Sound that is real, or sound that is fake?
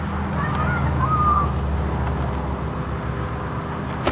real